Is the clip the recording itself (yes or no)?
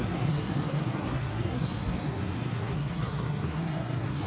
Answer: no